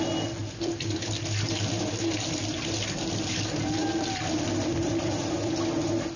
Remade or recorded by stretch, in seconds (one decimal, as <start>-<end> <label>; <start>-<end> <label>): 0.0-0.4 recorded; 0.4-2.4 remade; 2.4-3.8 recorded; 3.8-5.5 remade; 5.5-6.2 recorded

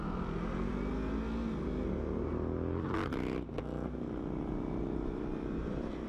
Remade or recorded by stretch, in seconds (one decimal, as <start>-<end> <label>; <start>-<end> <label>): 0.0-0.7 remade; 0.7-4.4 recorded; 4.4-6.1 remade

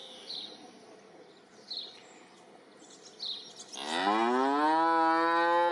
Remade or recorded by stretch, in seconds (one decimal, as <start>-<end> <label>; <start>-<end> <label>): 0.0-0.7 remade; 0.7-5.7 recorded